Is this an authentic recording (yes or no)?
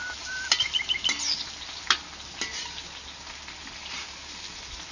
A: yes